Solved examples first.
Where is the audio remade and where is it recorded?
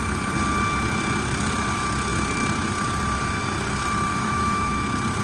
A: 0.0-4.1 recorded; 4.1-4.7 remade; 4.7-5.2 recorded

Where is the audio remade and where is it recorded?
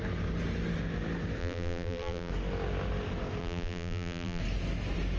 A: 0.0-1.4 recorded; 1.4-2.3 remade; 2.3-3.4 recorded; 3.4-4.4 remade; 4.4-5.2 recorded